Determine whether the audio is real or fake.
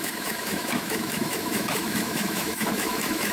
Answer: fake